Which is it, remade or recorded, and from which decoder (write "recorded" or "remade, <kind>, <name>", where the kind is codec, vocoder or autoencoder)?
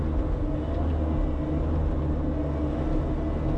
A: recorded